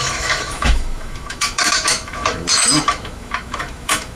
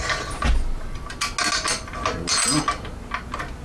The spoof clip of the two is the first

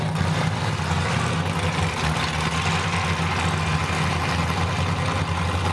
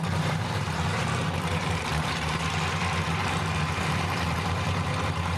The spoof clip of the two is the second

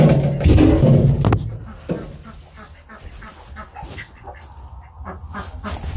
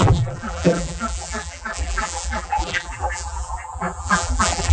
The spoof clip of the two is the second